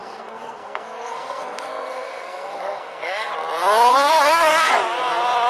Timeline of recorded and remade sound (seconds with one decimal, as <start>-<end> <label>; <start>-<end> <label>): 0.0-3.3 remade; 3.3-3.9 recorded; 3.9-4.7 remade; 4.7-5.5 recorded